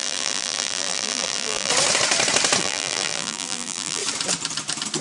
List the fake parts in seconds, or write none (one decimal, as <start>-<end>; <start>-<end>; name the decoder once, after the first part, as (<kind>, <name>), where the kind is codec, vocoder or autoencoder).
0.0-1.7 (vocoder, BigVGAN v2); 2.6-4.0